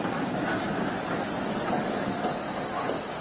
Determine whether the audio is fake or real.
real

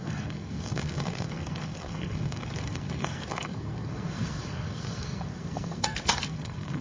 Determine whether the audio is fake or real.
fake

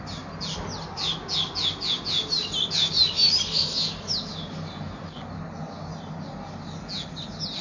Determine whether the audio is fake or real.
real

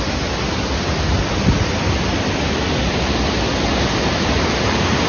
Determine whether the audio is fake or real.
real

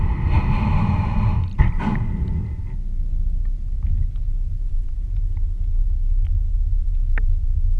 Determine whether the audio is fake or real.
real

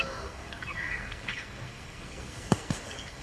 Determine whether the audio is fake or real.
fake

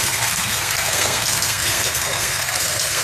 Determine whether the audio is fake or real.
fake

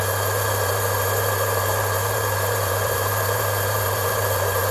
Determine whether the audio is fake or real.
fake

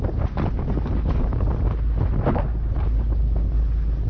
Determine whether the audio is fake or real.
real